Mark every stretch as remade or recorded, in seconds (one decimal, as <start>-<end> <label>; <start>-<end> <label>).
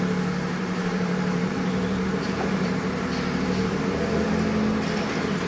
0.0-0.6 recorded; 0.6-3.9 remade; 3.9-5.5 recorded